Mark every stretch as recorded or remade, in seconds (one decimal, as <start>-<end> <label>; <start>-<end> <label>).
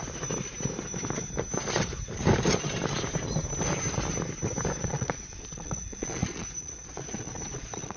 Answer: 0.0-4.8 recorded; 4.8-8.0 remade